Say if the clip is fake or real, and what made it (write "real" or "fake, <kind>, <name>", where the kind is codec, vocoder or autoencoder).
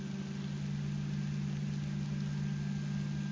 real